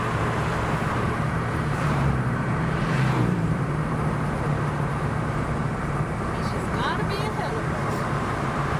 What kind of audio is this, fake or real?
fake